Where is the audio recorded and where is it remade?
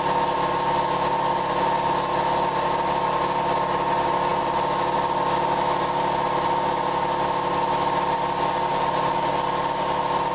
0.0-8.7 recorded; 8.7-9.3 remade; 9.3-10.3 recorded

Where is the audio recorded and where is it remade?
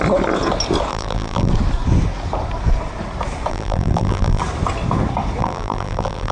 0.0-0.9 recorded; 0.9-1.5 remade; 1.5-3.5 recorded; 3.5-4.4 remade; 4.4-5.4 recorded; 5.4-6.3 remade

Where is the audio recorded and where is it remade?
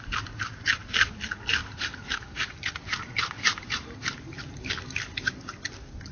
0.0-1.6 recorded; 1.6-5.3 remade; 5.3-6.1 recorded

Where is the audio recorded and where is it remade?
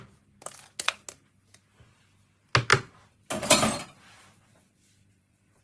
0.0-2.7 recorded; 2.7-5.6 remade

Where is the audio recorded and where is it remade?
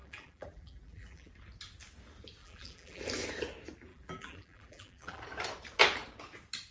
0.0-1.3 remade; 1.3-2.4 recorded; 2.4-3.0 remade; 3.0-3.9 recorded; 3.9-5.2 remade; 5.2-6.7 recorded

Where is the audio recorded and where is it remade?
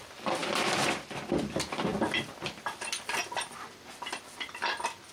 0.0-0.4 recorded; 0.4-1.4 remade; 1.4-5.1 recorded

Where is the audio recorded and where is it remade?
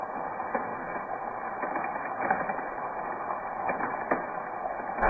0.0-5.1 recorded